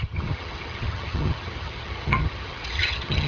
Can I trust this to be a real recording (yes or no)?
no